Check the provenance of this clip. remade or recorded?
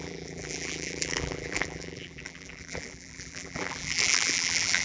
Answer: remade